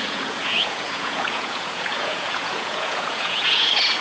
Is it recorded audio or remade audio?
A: remade